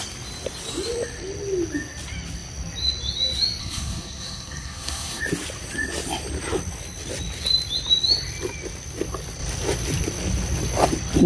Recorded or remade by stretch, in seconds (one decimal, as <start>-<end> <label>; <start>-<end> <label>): 0.0-3.6 recorded; 3.6-5.2 remade; 5.2-11.3 recorded